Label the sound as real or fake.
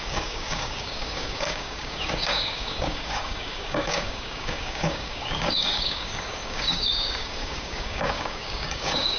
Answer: fake